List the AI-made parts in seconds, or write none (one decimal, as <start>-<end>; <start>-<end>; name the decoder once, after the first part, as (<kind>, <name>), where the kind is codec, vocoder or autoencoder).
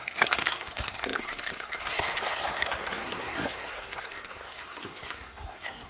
0.0-5.9 (codec, SNAC)